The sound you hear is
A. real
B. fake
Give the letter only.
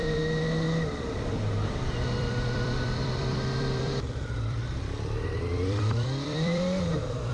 B